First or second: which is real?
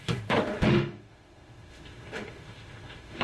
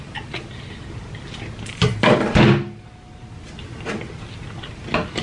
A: second